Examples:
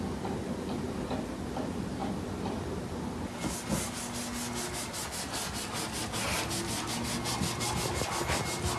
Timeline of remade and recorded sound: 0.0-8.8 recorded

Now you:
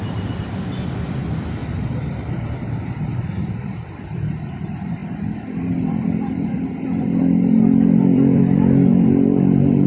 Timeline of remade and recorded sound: 0.0-9.9 remade

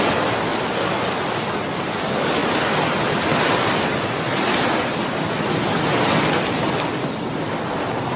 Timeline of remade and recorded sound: 0.0-8.2 recorded